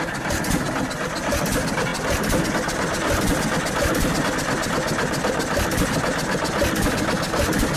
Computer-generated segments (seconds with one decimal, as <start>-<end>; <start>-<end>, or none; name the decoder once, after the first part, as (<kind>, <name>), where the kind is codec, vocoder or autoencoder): none